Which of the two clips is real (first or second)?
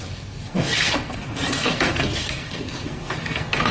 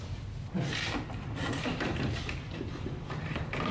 second